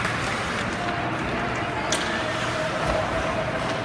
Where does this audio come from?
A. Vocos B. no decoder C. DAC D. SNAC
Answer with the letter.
B